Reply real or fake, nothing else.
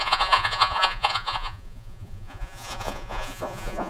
fake